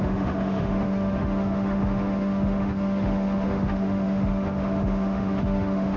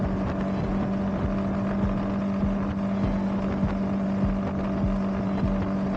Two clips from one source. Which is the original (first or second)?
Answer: second